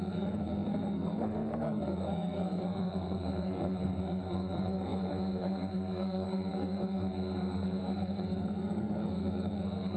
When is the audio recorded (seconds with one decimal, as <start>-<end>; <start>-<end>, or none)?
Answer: none